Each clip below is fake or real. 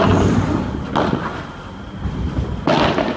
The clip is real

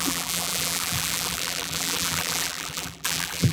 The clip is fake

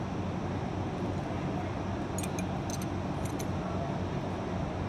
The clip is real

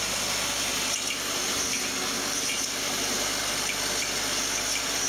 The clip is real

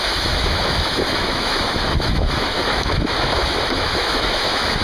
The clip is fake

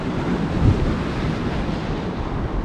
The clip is real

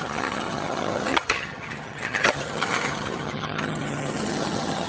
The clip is fake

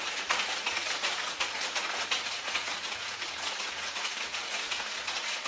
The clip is fake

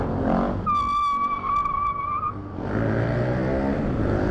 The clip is real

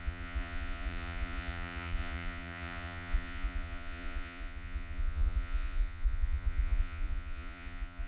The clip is fake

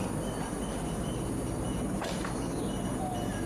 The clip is real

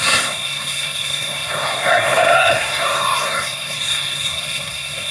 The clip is fake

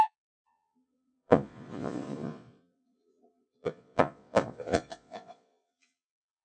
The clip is fake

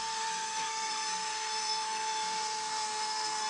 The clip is fake